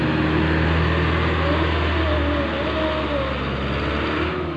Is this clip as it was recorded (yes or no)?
yes